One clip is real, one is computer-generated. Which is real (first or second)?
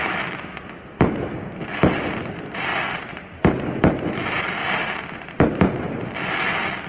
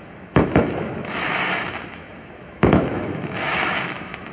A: first